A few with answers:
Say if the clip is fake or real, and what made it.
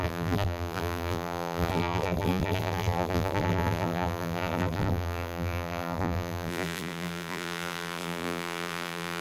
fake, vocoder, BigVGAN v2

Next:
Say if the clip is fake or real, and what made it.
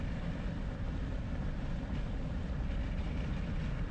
fake, vocoder, BigVGAN v2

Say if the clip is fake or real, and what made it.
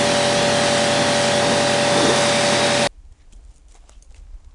real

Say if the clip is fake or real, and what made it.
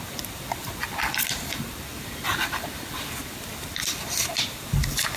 fake, vocoder, BigVGAN v2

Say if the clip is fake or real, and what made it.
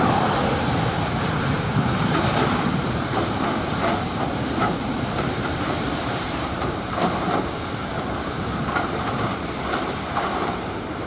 fake, vocoder, BigVGAN v2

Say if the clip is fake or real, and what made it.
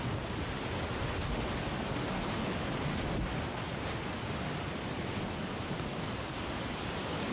real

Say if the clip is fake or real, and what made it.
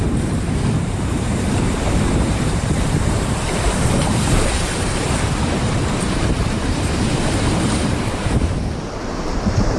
fake, vocoder, BigVGAN v2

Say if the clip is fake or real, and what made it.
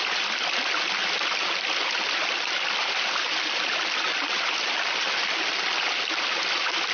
real